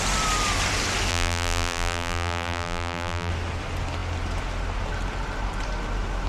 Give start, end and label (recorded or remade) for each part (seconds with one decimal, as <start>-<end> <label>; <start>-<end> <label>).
0.0-1.1 recorded; 1.1-3.3 remade; 3.3-6.3 recorded